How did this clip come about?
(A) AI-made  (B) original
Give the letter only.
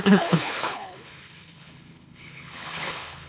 A